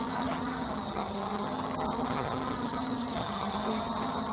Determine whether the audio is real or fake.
fake